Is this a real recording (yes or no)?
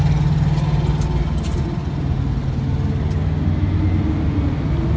yes